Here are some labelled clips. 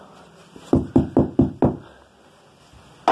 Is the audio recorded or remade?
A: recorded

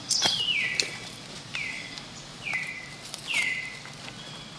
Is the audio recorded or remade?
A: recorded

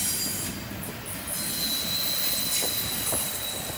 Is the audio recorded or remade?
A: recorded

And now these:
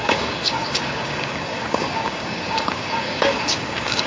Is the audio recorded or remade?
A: remade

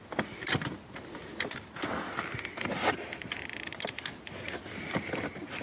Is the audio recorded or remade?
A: recorded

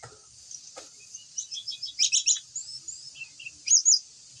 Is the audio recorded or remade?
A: recorded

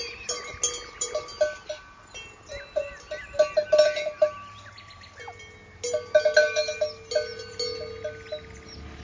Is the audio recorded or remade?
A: recorded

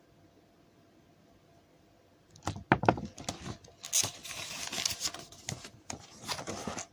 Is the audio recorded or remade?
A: recorded